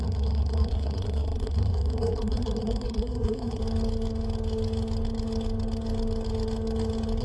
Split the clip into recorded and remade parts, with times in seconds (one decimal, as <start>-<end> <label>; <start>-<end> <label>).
0.0-3.6 remade; 3.6-7.2 recorded